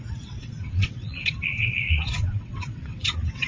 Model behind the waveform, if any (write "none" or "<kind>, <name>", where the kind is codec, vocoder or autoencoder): vocoder, WaveNeXt